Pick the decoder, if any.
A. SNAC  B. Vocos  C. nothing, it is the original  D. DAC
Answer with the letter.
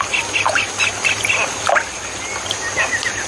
C